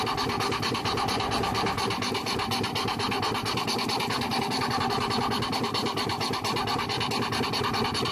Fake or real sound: real